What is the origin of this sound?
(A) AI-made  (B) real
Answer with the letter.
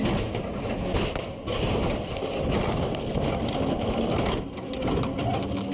B